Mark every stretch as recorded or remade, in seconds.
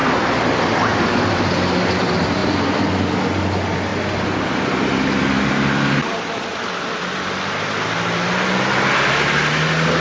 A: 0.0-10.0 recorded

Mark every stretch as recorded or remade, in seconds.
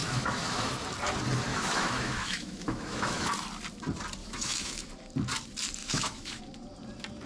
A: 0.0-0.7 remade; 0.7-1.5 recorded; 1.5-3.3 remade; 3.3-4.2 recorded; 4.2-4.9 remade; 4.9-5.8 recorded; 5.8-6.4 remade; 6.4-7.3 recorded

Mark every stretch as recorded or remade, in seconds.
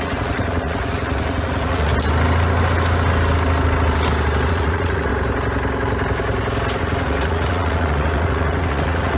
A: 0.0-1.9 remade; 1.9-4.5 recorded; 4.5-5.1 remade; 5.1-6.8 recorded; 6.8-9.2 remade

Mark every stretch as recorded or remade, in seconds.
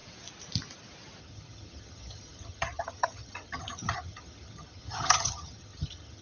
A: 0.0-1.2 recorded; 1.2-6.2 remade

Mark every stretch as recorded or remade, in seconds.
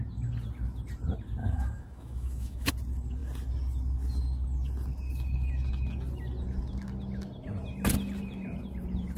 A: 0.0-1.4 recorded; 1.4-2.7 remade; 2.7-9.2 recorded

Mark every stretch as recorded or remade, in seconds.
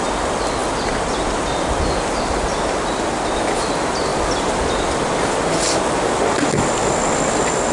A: 0.0-7.7 recorded